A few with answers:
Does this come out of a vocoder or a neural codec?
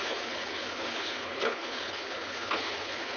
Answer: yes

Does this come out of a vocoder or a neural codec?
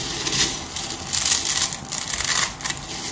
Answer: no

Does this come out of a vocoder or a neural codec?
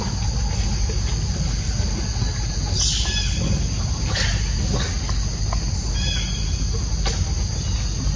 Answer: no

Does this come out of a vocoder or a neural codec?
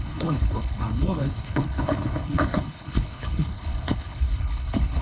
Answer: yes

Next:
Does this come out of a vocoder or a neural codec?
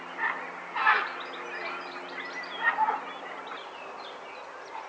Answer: no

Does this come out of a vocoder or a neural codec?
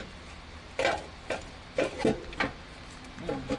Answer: no